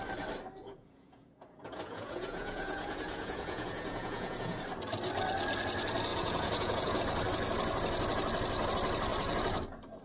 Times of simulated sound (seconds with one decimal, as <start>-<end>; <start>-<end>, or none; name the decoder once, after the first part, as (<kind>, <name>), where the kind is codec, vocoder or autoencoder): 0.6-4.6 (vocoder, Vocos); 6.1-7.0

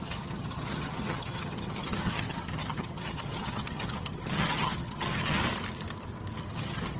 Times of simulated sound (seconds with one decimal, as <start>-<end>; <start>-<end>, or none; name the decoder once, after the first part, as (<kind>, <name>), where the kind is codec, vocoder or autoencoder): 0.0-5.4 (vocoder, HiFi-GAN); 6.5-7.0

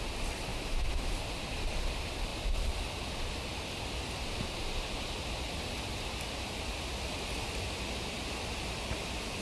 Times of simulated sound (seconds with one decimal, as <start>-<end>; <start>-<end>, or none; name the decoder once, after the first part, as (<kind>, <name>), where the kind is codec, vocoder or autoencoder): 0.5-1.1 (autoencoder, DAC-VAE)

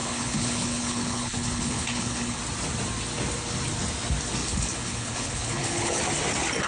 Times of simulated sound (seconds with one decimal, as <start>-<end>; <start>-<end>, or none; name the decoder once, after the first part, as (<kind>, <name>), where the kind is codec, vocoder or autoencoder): 0.0-2.4 (codec, HILCodec); 4.4-6.0